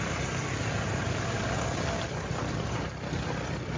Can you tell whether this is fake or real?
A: fake